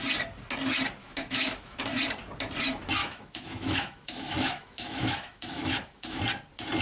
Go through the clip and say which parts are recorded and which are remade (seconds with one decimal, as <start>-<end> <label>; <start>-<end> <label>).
0.0-1.0 recorded; 1.0-1.8 remade; 1.8-3.0 recorded; 3.0-6.2 remade; 6.2-6.8 recorded

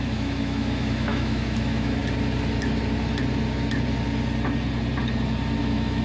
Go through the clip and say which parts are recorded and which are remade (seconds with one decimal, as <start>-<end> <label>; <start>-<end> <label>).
0.0-2.0 remade; 2.0-5.6 recorded; 5.6-6.0 remade

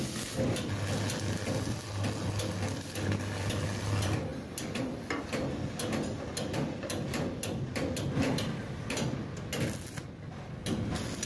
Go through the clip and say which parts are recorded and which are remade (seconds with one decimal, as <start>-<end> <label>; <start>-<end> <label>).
0.0-11.3 recorded